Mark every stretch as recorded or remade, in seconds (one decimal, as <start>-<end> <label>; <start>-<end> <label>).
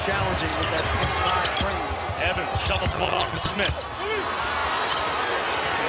0.0-2.9 recorded; 2.9-3.5 remade; 3.5-5.9 recorded